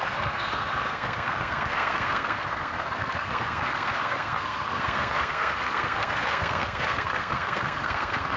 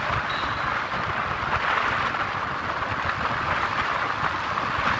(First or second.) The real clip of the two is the second